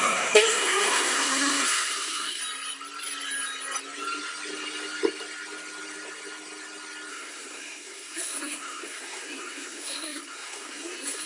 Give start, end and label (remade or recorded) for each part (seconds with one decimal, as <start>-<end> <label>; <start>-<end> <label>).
0.0-2.4 remade; 2.4-7.1 recorded; 7.1-11.3 remade